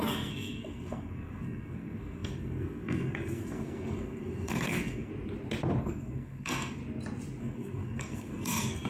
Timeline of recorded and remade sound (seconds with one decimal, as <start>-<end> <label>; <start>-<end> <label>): 0.0-5.1 remade; 5.1-5.8 recorded; 5.8-6.8 remade; 6.8-7.4 recorded; 7.4-8.9 remade